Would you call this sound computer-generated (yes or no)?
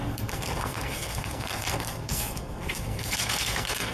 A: yes